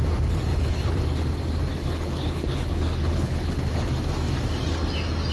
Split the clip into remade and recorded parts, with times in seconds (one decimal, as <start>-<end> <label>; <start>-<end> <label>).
0.0-0.5 recorded; 0.5-1.0 remade; 1.0-1.7 recorded; 1.7-3.9 remade; 3.9-5.3 recorded